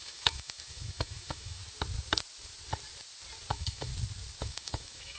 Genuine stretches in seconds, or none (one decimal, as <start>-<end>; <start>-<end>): 1.6-3.5; 3.9-4.4